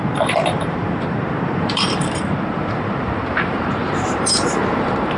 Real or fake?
fake